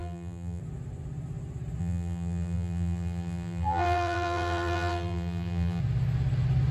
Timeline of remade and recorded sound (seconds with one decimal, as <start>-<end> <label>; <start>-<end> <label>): 0.0-0.6 remade; 0.6-1.8 recorded; 1.8-5.8 remade; 5.8-6.7 recorded